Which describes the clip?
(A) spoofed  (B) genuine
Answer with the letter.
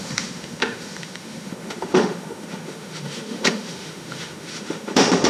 A